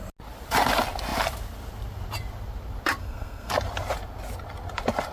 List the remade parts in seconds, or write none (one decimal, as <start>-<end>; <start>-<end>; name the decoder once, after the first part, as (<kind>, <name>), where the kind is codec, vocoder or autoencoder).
3.0-3.5 (codec, SNAC)